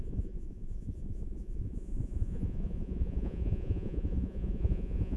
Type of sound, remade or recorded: remade